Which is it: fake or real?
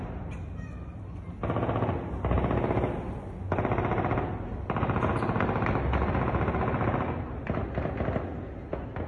real